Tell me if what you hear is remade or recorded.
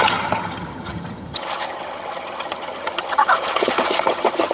remade